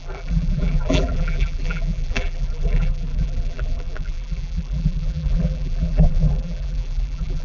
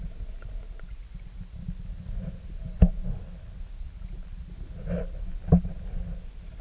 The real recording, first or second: second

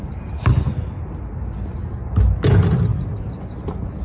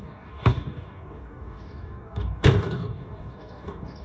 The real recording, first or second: first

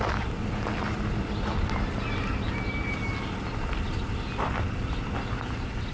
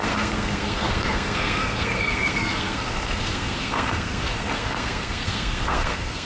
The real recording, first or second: first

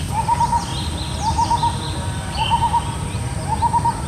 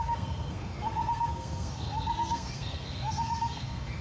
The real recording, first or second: first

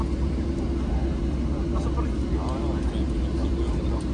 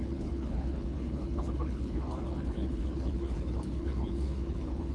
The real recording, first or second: first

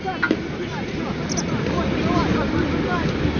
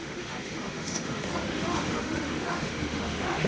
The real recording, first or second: first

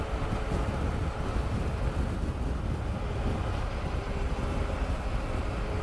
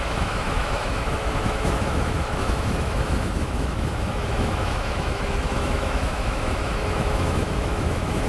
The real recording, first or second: first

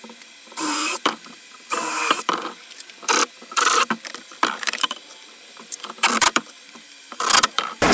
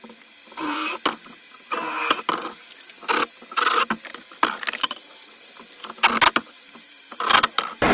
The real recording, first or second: second